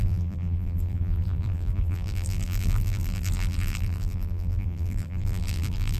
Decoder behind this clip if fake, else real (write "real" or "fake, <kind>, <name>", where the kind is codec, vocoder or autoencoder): fake, vocoder, BigVGAN v2